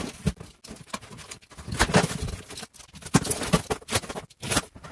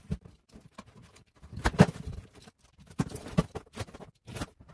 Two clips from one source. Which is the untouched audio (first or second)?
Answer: first